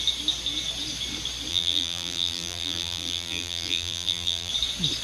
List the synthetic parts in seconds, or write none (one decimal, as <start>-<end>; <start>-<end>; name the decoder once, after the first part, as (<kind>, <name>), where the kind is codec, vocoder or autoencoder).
1.5-4.5 (vocoder, BigVGAN v2)